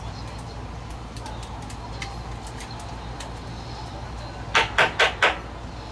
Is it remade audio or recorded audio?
recorded